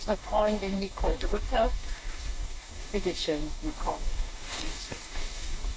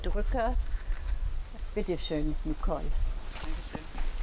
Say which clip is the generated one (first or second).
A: first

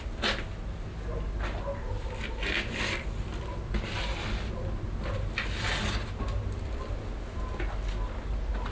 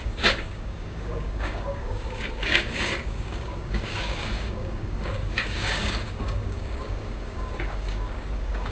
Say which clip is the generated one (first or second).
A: second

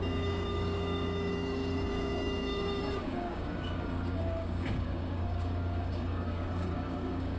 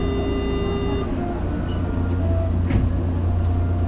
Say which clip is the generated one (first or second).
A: first